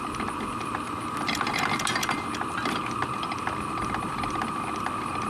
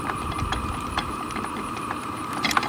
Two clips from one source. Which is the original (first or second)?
first